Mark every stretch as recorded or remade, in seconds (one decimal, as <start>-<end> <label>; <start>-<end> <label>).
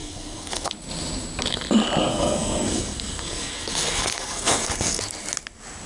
0.0-0.7 remade; 0.7-2.1 recorded; 2.1-5.0 remade; 5.0-5.9 recorded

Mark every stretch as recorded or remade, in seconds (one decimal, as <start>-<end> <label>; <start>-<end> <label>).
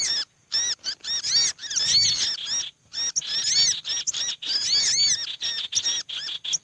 0.0-6.6 recorded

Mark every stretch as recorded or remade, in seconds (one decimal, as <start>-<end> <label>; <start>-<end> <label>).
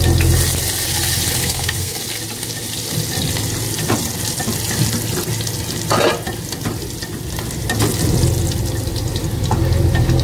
0.0-1.4 recorded; 1.4-2.0 remade; 2.0-10.2 recorded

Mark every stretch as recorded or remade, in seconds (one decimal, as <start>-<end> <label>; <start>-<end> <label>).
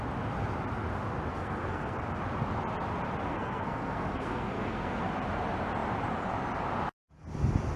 0.0-1.3 recorded; 1.3-2.0 remade; 2.0-3.3 recorded; 3.3-5.1 remade; 5.1-7.8 recorded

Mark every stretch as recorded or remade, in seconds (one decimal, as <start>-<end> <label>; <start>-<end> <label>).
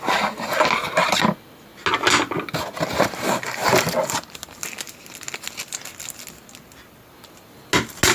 0.0-8.1 recorded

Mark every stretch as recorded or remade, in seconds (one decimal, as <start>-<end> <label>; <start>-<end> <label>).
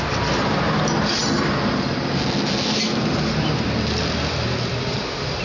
0.0-5.4 recorded